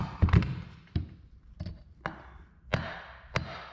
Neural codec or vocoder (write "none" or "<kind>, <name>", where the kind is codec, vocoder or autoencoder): none